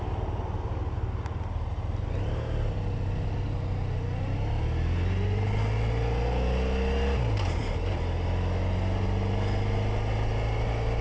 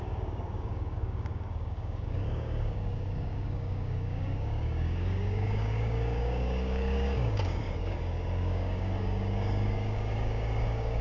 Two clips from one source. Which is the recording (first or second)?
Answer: first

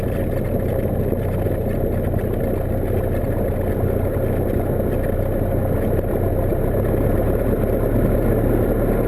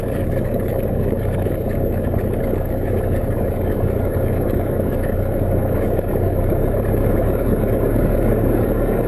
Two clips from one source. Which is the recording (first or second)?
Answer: first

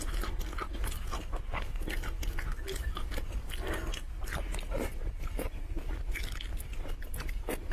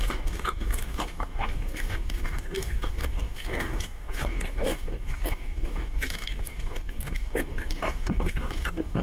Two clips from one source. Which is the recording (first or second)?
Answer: first